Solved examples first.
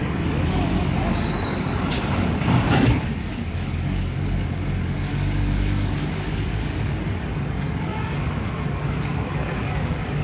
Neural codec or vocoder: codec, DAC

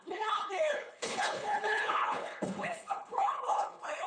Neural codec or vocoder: codec, HILCodec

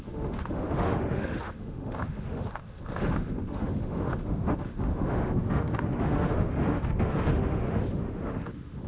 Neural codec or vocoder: autoencoder, DAC-VAE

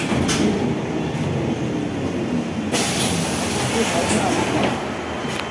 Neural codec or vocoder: none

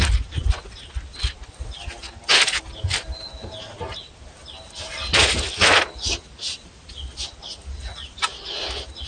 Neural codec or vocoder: none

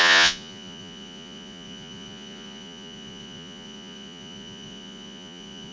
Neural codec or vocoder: vocoder, Vocos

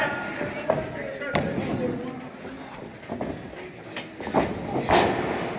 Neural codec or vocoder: none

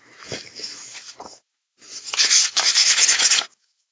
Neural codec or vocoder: autoencoder, DAC-VAE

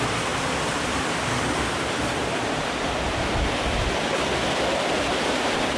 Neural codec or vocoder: none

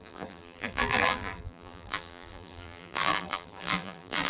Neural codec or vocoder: vocoder, BigVGAN v2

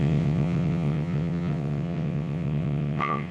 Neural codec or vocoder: vocoder, WaveNeXt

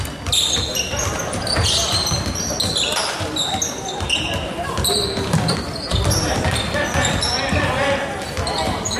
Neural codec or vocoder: none